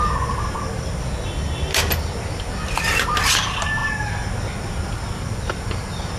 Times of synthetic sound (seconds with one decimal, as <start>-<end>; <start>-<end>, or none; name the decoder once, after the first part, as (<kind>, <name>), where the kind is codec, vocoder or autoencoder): none